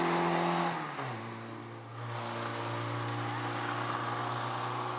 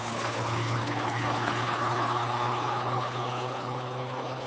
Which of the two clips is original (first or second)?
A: first